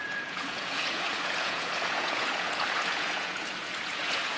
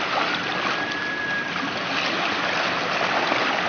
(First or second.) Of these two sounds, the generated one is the first